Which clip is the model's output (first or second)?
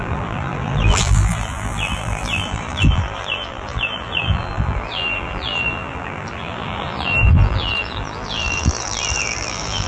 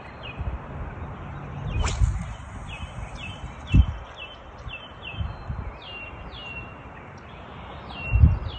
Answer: first